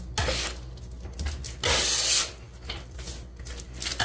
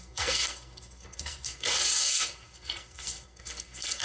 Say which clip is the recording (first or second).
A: first